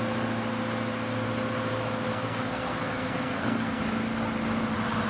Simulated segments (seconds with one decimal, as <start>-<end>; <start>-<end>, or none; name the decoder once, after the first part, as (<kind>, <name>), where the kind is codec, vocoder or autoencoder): 2.1-3.8 (codec, SNAC)